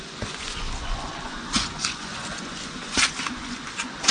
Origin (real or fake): fake